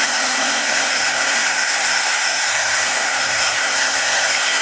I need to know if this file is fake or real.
fake